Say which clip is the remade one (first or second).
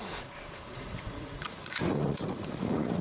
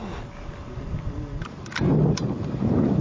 first